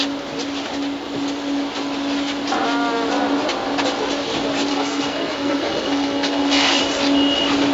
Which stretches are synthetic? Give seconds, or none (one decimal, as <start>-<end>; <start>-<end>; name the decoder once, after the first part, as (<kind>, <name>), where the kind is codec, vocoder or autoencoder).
4.7-6.8 (codec, SNAC)